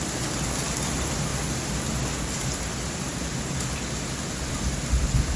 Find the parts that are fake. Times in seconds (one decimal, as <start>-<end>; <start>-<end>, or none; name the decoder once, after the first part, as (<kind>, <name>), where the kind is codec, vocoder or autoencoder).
none